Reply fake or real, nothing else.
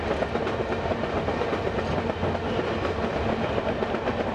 real